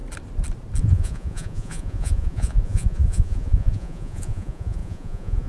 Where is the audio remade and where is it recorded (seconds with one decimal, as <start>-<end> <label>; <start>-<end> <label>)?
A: 0.0-0.8 recorded; 0.8-5.5 remade